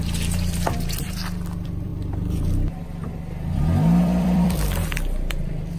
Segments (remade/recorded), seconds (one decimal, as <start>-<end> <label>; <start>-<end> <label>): 0.0-1.9 remade; 1.9-4.0 recorded; 4.0-5.8 remade